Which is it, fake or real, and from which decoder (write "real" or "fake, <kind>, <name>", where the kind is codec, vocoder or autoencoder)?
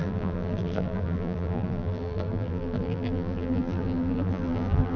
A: fake, vocoder, BigVGAN v2